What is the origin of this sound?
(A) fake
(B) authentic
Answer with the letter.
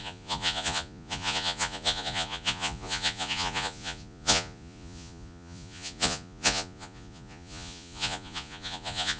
A